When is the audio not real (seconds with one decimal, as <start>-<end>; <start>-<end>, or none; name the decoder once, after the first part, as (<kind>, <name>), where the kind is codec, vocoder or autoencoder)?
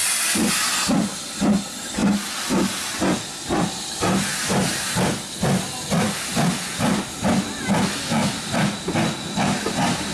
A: none